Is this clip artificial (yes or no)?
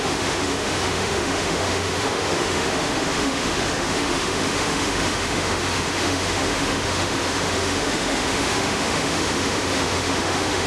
yes